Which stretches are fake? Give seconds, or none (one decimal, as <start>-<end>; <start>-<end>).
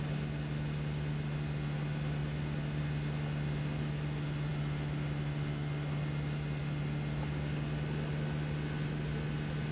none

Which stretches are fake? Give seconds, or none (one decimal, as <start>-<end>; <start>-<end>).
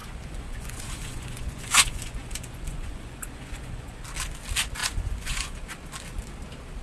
0.0-4.0; 4.8-5.6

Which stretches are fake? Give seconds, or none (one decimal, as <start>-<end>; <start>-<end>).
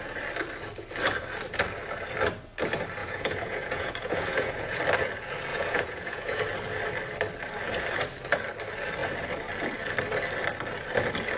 3.0-4.8; 5.5-6.4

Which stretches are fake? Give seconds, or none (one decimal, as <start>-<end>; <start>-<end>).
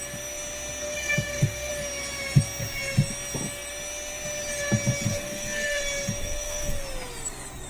0.8-1.7; 5.1-5.8; 6.2-6.8